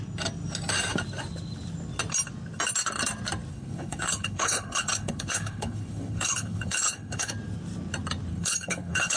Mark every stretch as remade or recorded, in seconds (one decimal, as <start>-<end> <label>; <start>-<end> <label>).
0.0-3.5 recorded; 3.5-7.3 remade; 7.3-8.3 recorded; 8.3-9.2 remade